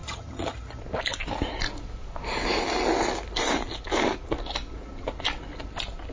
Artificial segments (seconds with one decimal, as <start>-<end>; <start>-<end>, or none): 0.0-0.8